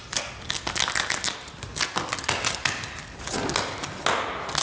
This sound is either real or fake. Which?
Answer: real